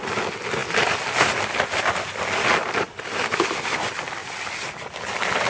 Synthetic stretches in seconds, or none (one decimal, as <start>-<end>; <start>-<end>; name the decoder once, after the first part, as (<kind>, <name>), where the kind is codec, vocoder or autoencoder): none